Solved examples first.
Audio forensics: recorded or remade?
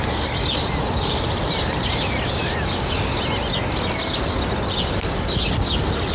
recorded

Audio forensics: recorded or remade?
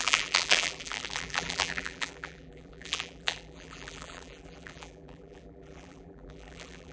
remade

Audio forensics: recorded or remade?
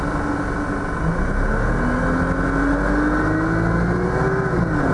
recorded